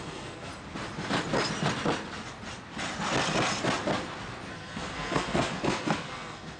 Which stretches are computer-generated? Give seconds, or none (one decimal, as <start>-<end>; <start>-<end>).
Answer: 0.0-0.5; 4.5-6.6